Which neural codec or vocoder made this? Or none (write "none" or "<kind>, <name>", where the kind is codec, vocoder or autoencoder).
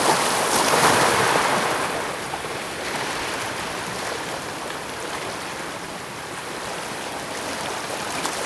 vocoder, BigVGAN v2